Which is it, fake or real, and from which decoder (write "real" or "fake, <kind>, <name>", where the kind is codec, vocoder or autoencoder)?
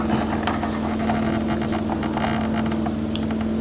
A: real